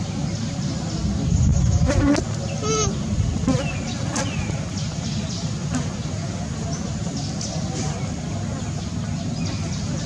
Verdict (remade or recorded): recorded